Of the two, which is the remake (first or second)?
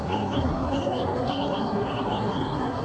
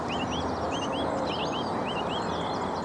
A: first